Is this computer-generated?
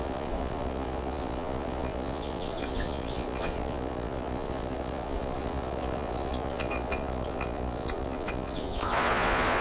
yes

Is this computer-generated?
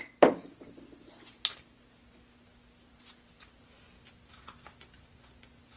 no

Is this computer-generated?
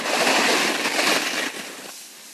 no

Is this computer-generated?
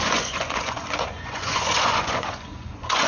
yes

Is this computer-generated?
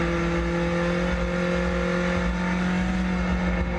no